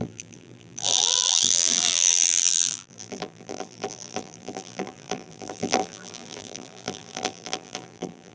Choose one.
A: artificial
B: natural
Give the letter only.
A